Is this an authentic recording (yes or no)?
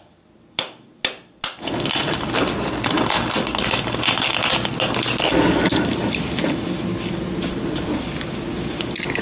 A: yes